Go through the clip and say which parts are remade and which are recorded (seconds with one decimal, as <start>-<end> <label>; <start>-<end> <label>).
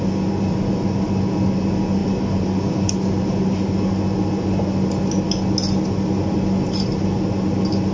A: 0.0-7.9 recorded